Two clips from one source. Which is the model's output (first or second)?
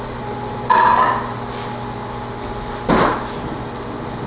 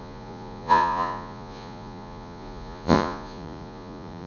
second